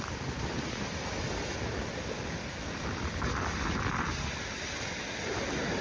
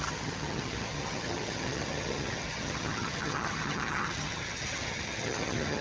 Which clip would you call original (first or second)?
first